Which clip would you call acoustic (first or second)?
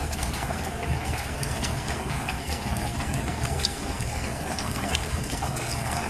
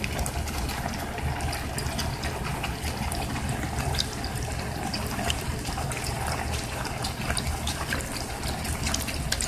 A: second